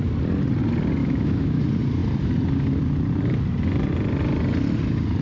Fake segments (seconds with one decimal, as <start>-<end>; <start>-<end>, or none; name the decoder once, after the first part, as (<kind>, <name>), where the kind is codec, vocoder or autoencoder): 1.0-1.6 (autoencoder, DAC-VAE)